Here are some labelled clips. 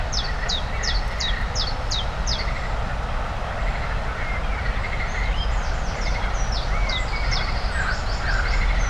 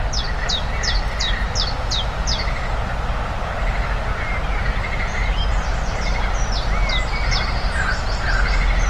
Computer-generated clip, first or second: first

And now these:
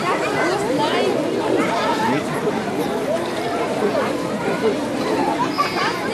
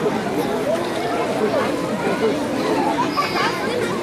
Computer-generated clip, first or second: first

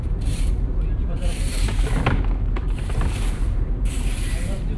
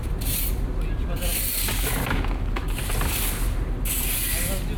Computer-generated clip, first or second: first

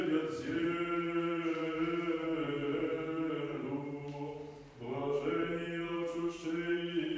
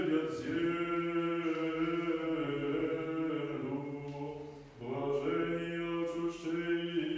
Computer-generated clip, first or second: first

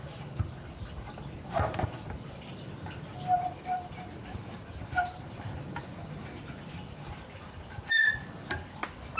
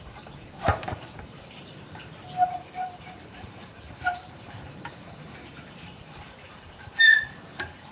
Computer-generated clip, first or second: second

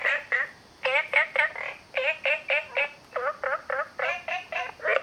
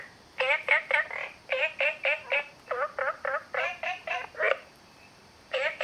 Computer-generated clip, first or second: second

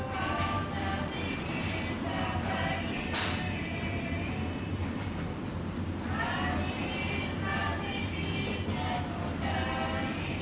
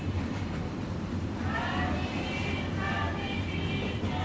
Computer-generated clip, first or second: second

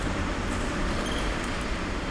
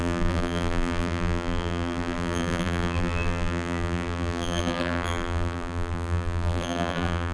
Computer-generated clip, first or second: second